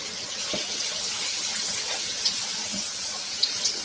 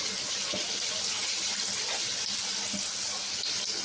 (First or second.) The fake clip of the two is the first